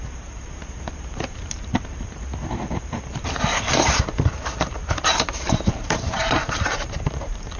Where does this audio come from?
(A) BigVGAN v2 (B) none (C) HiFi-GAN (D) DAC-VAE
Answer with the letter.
A